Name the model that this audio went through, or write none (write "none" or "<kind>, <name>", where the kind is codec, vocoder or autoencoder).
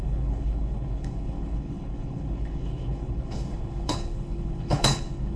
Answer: codec, HILCodec